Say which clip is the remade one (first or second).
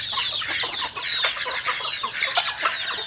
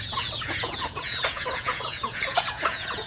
second